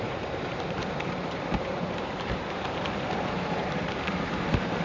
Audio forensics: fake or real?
fake